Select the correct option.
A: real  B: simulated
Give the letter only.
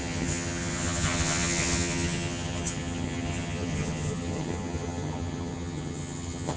B